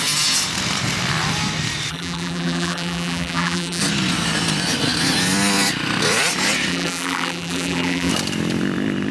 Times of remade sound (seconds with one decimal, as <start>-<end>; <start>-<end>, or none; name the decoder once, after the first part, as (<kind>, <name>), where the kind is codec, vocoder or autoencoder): 1.9-3.8 (vocoder, BigVGAN v2); 6.7-8.1